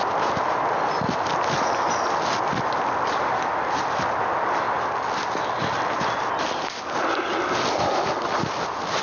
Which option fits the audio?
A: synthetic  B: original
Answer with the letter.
B